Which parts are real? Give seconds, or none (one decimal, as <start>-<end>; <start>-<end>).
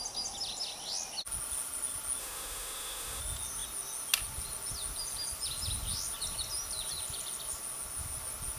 0.0-2.2; 3.2-8.6